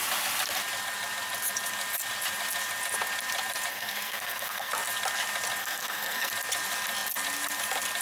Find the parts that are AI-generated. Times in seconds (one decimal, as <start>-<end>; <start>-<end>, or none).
3.7-4.7; 5.6-6.3